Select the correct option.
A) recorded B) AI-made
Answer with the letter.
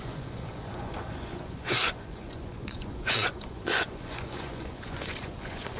B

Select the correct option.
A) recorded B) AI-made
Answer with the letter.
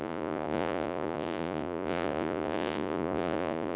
B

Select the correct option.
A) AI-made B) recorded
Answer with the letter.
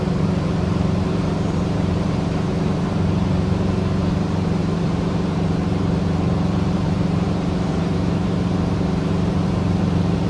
A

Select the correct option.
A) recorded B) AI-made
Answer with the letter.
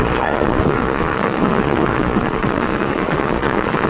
B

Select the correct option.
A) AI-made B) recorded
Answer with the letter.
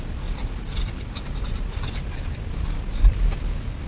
B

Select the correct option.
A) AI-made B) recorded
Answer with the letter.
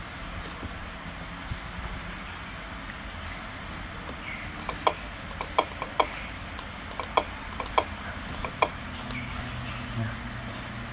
B